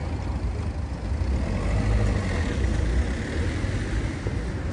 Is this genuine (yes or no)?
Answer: yes